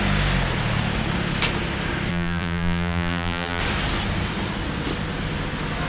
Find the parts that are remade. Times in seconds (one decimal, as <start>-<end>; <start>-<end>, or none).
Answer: 2.1-3.6